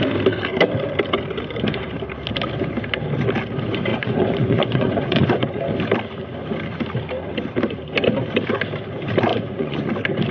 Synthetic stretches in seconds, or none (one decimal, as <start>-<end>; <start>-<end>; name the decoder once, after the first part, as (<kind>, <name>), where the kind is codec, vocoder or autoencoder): 3.9-5.6 (vocoder, Vocos); 9.3-9.9

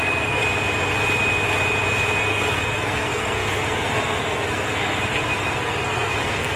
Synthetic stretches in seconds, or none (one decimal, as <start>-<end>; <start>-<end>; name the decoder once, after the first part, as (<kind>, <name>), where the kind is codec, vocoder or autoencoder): 0.0-0.4 (codec, SNAC); 2.2-6.6

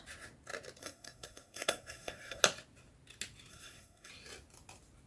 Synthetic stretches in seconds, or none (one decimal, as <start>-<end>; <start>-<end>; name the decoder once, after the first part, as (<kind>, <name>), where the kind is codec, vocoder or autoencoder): 0.8-2.4 (codec, SNAC); 3.5-4.1

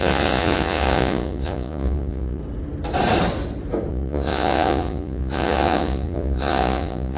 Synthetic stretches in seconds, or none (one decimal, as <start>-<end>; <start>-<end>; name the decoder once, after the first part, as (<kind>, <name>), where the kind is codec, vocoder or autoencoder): 0.0-2.4 (vocoder, Vocos); 3.9-7.2

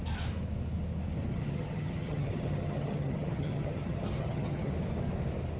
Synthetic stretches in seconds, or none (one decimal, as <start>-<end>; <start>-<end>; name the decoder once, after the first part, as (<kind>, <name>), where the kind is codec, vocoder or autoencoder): 1.3-4.7 (vocoder, HiFi-GAN)

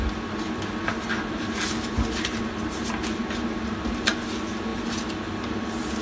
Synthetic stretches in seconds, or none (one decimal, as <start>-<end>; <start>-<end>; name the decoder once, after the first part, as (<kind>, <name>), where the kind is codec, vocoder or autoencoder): none